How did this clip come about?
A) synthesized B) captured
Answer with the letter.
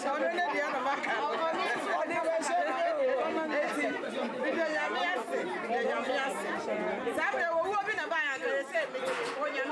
B